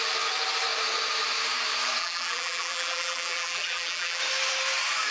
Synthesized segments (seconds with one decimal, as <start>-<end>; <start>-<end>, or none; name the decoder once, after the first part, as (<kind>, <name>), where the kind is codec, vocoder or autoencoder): 2.0-4.2 (vocoder, BigVGAN v2)